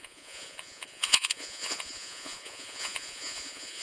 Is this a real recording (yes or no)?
no